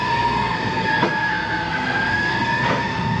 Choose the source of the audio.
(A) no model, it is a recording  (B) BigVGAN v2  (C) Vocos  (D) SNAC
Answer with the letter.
D